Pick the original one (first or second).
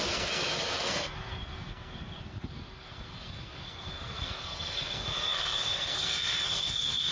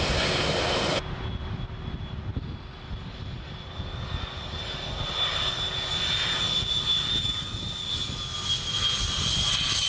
second